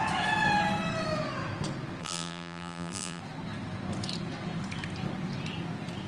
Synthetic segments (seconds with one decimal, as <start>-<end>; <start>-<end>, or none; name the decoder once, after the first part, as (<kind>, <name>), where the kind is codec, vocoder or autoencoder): 2.0-3.2 (vocoder, BigVGAN v2)